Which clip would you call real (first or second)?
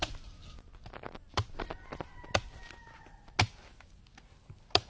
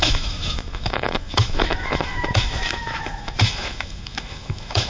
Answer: first